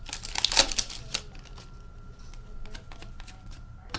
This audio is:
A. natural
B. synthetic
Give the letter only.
A